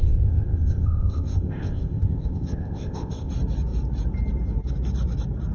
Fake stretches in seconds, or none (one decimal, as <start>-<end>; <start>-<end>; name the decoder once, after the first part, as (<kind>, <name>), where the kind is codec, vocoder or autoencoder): 0.0-3.3 (codec, ZipCodec)